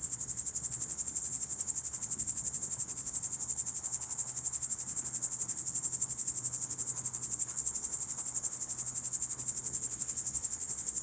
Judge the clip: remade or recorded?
remade